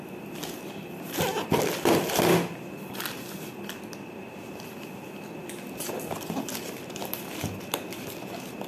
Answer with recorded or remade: recorded